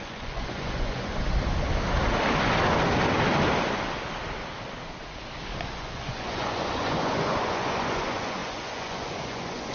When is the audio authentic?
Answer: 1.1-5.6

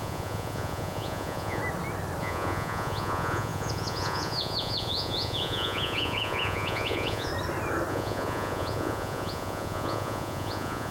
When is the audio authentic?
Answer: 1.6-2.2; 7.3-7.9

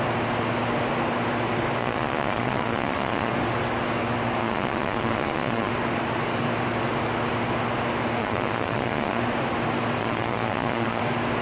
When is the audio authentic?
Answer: 0.0-1.8; 3.3-4.4; 5.7-8.2; 9.2-10.0; 11.0-11.4

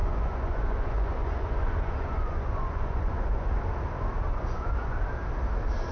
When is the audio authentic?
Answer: 3.5-4.3; 5.0-5.9

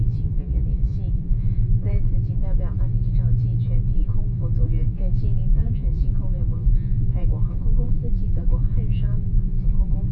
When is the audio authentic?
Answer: none

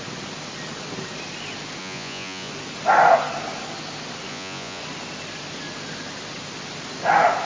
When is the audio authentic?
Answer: 0.0-1.8; 2.5-4.3; 4.8-7.4

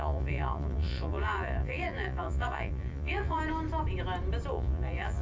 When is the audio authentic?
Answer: 3.4-4.5